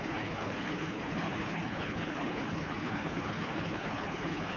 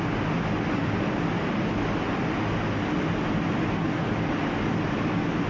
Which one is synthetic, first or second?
first